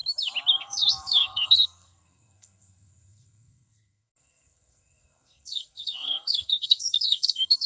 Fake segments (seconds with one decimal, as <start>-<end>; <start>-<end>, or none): 0.6-7.7